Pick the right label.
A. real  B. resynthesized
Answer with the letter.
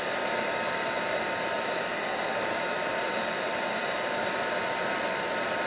B